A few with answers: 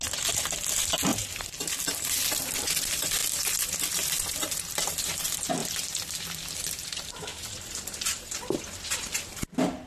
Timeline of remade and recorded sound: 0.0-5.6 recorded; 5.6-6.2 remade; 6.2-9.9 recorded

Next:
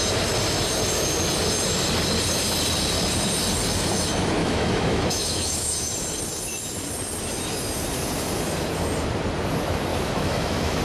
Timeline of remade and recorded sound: 0.0-4.4 recorded; 4.4-5.9 remade; 5.9-9.9 recorded; 9.9-10.8 remade

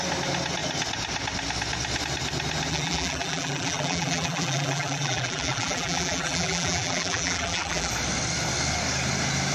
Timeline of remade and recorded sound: 0.0-2.7 recorded; 2.7-7.9 remade; 7.9-9.5 recorded